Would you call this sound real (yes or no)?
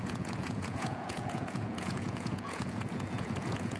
no